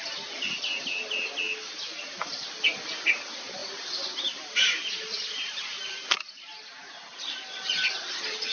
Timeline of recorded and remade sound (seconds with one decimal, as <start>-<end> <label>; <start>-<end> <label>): 0.0-3.6 recorded; 3.6-5.6 remade; 5.6-8.5 recorded

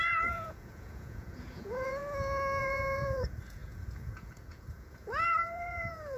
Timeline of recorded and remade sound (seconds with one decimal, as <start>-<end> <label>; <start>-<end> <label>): 0.0-2.0 remade; 2.0-2.6 recorded; 2.6-6.2 remade

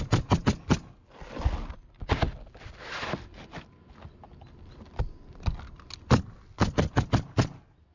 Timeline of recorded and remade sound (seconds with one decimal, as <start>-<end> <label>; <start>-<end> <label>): 0.0-7.9 recorded

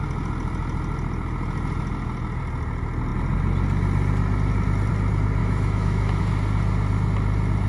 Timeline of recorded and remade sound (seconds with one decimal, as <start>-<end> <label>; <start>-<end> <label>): 0.0-5.4 recorded; 5.4-6.2 remade; 6.2-7.7 recorded